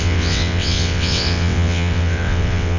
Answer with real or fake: fake